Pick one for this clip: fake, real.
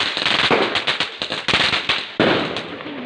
real